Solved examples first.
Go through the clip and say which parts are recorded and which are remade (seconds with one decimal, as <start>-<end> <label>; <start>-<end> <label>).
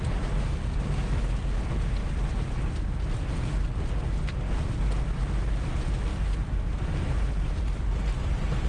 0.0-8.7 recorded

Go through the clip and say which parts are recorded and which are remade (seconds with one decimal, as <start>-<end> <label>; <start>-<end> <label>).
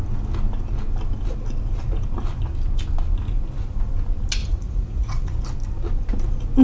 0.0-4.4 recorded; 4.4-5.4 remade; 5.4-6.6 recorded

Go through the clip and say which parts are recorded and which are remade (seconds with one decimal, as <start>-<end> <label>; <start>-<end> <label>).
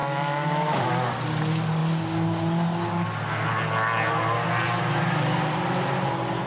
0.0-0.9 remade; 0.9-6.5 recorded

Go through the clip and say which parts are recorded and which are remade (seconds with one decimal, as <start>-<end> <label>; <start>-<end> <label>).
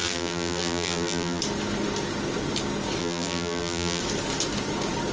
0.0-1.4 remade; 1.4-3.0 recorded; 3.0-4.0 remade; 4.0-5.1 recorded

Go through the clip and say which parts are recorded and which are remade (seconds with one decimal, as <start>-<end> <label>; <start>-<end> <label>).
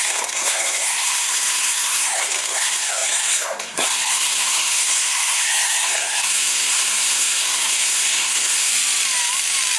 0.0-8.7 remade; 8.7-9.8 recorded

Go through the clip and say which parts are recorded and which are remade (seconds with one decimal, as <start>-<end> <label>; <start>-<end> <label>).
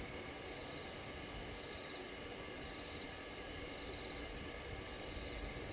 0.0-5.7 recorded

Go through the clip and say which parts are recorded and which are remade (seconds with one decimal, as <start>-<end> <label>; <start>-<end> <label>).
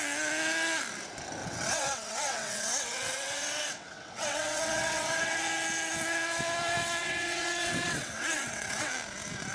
0.0-1.4 recorded; 1.4-5.4 remade; 5.4-7.0 recorded; 7.0-8.9 remade; 8.9-9.5 recorded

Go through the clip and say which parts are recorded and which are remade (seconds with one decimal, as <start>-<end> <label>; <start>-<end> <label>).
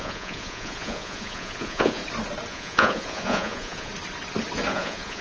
0.0-2.0 remade; 2.0-2.5 recorded; 2.5-3.9 remade; 3.9-4.7 recorded; 4.7-5.2 remade